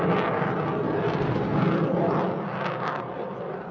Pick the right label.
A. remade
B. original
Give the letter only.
B